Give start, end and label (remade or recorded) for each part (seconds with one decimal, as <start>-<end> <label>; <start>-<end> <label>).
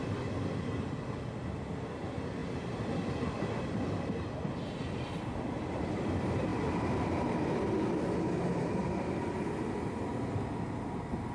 0.0-6.5 recorded; 6.5-7.5 remade; 7.5-11.3 recorded